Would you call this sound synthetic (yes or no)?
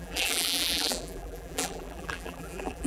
yes